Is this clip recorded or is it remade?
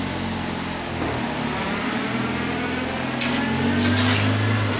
recorded